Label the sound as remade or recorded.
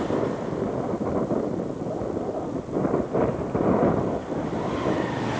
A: recorded